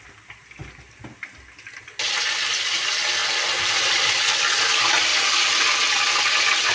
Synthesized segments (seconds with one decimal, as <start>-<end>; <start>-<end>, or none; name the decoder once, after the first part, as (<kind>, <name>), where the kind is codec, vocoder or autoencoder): none